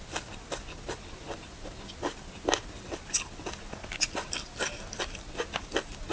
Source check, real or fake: real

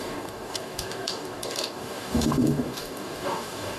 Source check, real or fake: fake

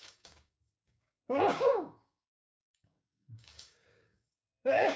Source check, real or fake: fake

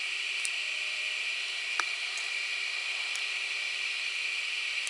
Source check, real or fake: real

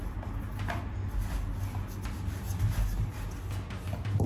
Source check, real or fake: real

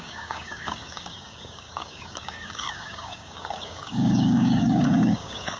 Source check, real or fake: fake